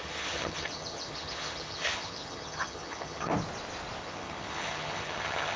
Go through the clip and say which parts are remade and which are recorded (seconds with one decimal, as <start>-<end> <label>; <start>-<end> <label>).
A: 0.0-3.3 remade; 3.3-4.0 recorded; 4.0-5.6 remade